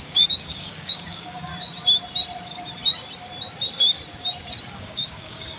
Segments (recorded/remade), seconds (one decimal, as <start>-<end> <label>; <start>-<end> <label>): 0.0-1.5 remade; 1.5-4.7 recorded; 4.7-5.6 remade